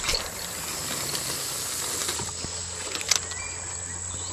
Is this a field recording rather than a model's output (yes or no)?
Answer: yes